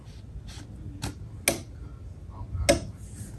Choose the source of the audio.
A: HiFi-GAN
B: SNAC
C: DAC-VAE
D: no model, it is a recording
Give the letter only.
D